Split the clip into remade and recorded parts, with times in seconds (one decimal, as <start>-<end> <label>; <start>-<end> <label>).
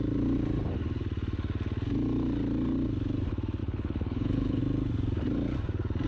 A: 0.0-3.6 recorded; 3.6-4.6 remade; 4.6-6.1 recorded